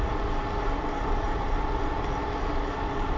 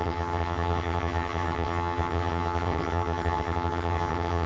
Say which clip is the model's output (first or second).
second